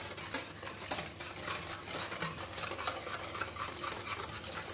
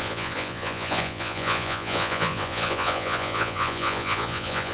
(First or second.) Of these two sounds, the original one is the first